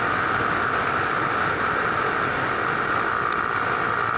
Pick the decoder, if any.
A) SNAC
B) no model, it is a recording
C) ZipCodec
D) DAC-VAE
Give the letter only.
B